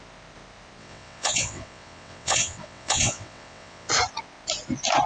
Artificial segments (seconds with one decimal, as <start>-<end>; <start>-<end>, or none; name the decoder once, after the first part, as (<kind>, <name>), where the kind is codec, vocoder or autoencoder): 0.8-3.9 (vocoder, WaveNeXt)